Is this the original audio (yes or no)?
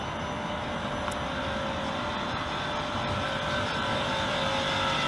yes